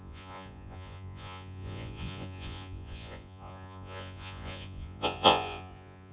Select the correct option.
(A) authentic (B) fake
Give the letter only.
B